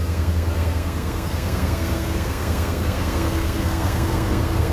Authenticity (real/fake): fake